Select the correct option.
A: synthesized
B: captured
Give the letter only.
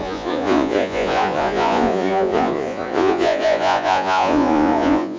A